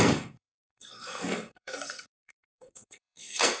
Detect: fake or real fake